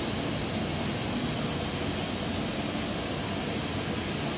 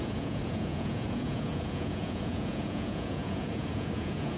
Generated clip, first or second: second